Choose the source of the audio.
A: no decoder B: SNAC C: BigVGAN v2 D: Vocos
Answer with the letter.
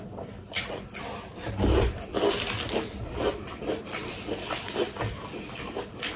A